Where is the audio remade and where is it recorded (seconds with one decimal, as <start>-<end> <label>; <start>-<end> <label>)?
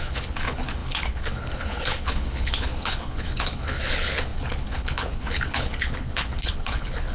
0.0-7.1 remade